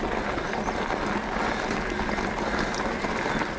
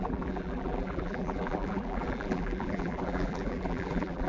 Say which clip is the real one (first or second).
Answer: first